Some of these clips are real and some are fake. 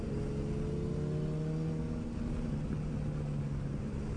real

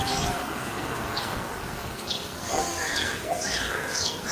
fake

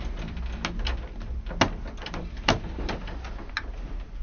real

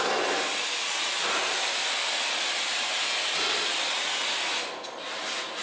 real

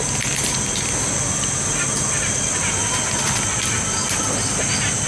real